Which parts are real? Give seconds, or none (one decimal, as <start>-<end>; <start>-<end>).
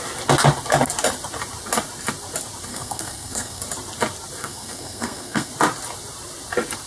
0.0-2.7; 3.6-4.4; 5.5-6.9